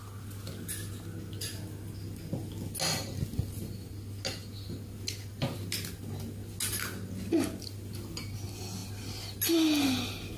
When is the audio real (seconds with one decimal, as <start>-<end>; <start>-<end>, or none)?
0.0-10.4